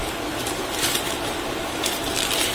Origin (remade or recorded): remade